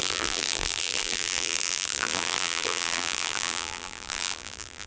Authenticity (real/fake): fake